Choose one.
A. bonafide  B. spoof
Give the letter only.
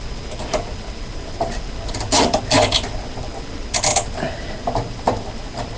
A